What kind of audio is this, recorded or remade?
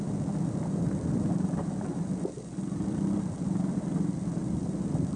recorded